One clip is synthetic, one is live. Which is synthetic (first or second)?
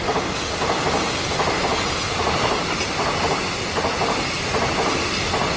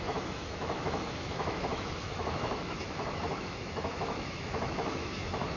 second